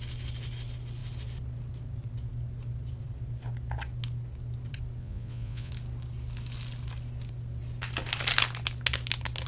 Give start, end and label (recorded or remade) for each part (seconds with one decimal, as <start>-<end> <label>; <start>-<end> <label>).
0.0-5.0 recorded; 5.0-5.7 remade; 5.7-9.5 recorded